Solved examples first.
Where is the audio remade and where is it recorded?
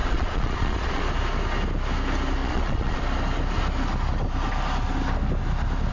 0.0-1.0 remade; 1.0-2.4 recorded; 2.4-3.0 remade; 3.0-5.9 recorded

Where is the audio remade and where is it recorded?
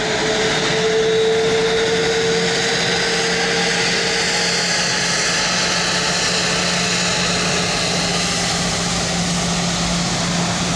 0.0-10.8 recorded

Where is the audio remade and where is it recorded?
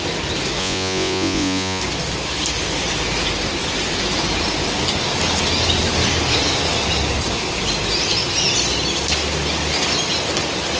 0.0-0.6 recorded; 0.6-1.8 remade; 1.8-10.8 recorded